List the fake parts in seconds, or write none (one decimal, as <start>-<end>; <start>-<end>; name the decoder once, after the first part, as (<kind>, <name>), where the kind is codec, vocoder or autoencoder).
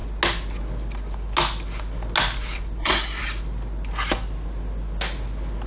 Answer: 2.8-3.2 (codec, SNAC)